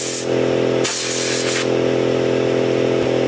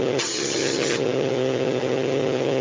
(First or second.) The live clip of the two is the first